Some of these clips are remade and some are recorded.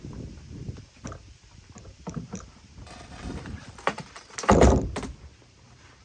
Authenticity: remade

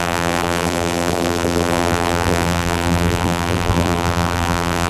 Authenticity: remade